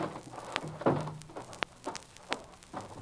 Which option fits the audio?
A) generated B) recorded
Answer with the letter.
B